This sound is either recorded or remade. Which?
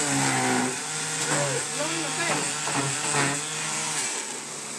recorded